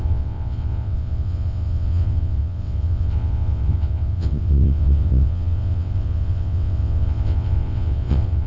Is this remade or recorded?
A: remade